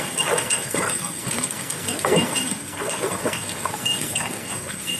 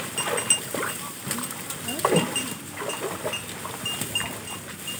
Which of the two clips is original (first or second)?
second